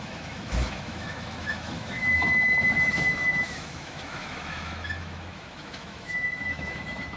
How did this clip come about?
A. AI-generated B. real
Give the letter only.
A